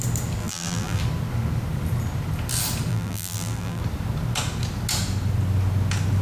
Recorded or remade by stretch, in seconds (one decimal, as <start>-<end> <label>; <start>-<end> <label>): 0.0-0.4 recorded; 0.4-1.0 remade; 1.0-2.9 recorded; 2.9-3.8 remade; 3.8-6.2 recorded